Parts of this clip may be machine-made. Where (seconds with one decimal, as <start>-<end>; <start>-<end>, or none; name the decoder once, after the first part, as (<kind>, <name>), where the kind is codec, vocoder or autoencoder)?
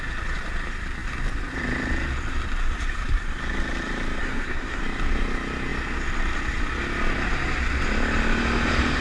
4.2-4.8 (codec, SNAC)